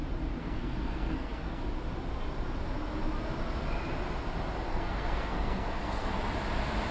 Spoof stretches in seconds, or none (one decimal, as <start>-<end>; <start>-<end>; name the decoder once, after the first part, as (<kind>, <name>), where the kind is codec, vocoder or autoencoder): 0.4-1.6 (codec, SNAC); 4.7-6.1